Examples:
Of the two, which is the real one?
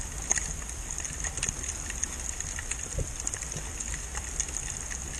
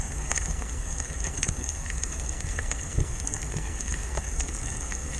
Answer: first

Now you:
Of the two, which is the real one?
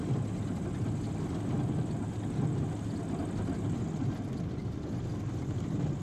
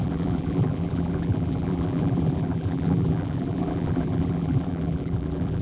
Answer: first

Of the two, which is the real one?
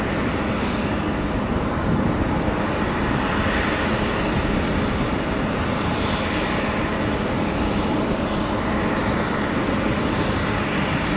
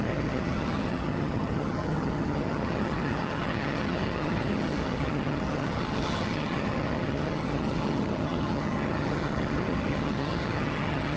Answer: first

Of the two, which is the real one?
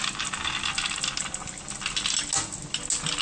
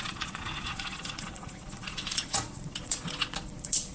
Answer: first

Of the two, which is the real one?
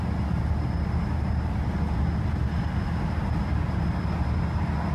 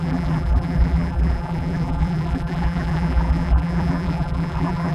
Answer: first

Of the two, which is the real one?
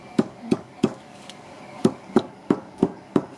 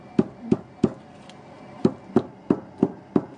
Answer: second